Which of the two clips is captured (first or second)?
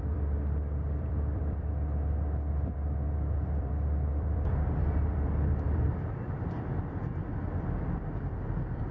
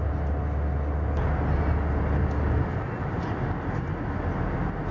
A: second